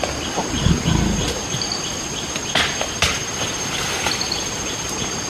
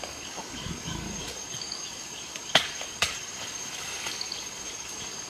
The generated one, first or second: second